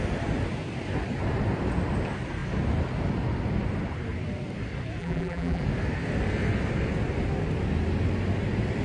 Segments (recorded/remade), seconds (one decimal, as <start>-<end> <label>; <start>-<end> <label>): 0.0-5.0 recorded; 5.0-5.6 remade; 5.6-8.8 recorded